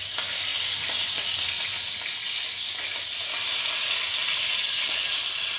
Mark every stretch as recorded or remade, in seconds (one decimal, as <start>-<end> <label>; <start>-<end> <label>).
0.0-5.6 recorded

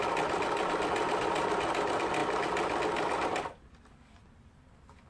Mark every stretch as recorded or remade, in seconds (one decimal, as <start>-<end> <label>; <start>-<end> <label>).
0.0-5.1 recorded

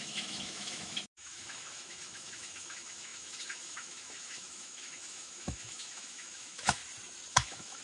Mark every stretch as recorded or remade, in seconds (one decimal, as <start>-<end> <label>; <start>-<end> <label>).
0.0-6.8 remade; 6.8-7.3 recorded; 7.3-7.8 remade

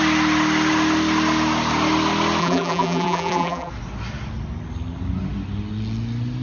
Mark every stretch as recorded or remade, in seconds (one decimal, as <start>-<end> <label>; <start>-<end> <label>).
0.0-2.4 recorded; 2.4-3.7 remade; 3.7-6.4 recorded

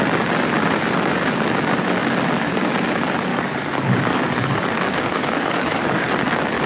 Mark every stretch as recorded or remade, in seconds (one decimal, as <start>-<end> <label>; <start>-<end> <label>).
0.0-3.3 recorded; 3.3-6.1 remade; 6.1-6.7 recorded

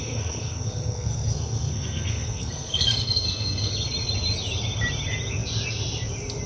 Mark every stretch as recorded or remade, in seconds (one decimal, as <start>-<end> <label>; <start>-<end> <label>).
0.0-3.7 remade; 3.7-6.5 recorded

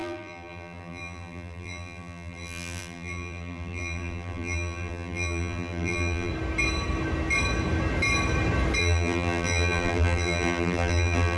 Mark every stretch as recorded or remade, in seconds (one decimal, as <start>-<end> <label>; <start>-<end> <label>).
0.0-6.3 remade; 6.3-8.8 recorded; 8.8-11.4 remade

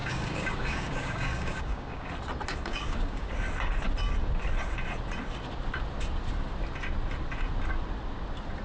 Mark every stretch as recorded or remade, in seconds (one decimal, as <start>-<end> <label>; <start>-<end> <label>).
0.0-2.1 remade; 2.1-2.5 recorded; 2.5-3.3 remade; 3.3-8.6 recorded